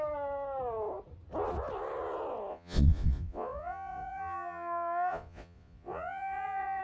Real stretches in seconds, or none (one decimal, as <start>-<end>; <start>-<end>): 0.0-2.5